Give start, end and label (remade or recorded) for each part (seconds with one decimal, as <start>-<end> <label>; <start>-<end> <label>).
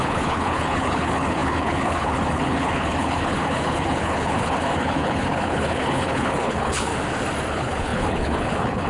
0.0-6.9 remade; 6.9-7.5 recorded; 7.5-8.9 remade